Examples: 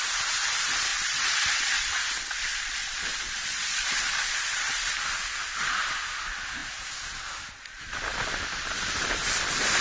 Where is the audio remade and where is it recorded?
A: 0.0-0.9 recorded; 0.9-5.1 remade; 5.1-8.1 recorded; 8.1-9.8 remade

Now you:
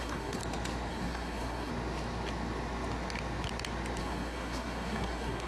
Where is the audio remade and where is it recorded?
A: 0.0-0.4 remade; 0.4-0.9 recorded; 0.9-1.7 remade; 1.7-4.0 recorded; 4.0-5.5 remade

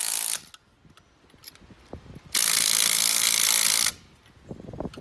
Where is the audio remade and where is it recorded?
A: 0.0-1.4 remade; 1.4-2.4 recorded; 2.4-5.0 remade